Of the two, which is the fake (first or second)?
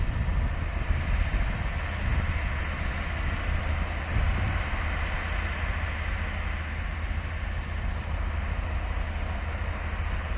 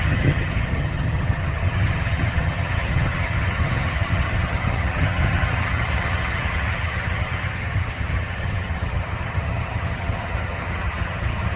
second